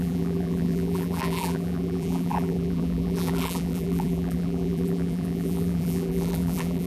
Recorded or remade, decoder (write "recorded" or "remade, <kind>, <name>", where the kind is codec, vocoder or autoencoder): remade, vocoder, BigVGAN v2